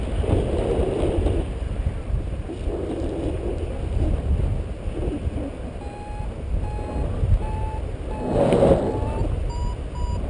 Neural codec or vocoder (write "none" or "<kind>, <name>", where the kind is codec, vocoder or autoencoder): none